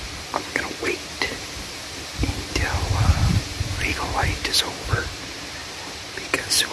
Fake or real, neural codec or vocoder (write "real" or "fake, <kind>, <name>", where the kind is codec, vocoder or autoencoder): fake, vocoder, BigVGAN v2